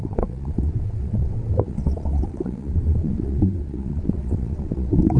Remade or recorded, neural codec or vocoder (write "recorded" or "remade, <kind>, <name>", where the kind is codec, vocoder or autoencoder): remade, vocoder, WaveNeXt